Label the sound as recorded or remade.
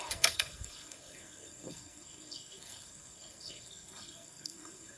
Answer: remade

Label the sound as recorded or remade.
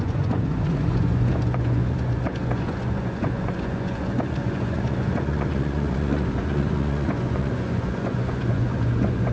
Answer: remade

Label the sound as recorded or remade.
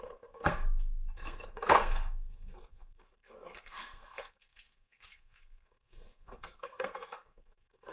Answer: remade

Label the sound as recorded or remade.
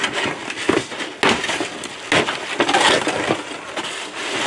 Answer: recorded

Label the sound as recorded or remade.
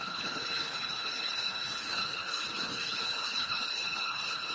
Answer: remade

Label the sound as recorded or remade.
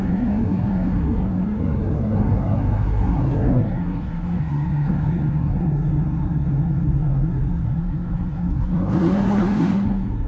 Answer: remade